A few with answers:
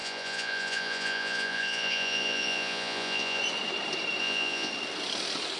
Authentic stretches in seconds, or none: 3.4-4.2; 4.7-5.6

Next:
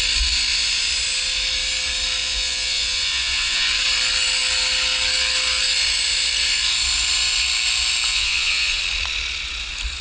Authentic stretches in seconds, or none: 0.0-2.2; 3.7-8.1; 8.8-10.0

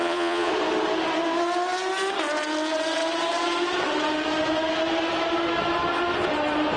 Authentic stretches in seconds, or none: 0.5-6.8

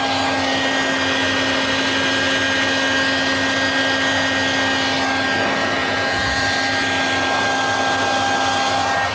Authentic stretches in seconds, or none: 0.0-5.8; 6.4-9.1

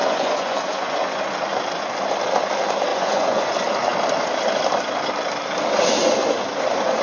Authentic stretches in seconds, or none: 1.2-2.9; 3.5-7.0

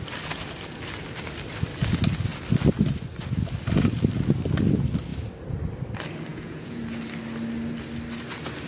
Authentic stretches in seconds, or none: 0.0-6.3; 6.8-8.7